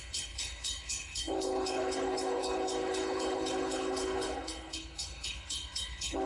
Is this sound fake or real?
fake